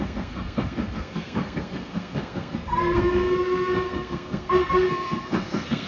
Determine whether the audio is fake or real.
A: fake